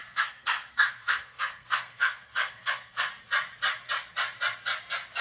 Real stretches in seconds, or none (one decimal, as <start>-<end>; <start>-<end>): 3.1-5.2